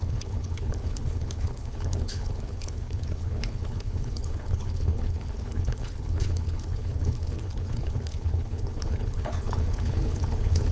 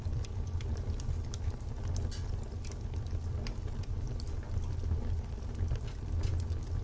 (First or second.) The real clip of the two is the second